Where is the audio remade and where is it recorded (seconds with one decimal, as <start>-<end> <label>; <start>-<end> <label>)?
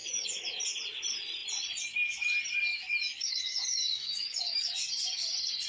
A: 0.0-0.6 remade; 0.6-2.7 recorded; 2.7-4.7 remade; 4.7-5.7 recorded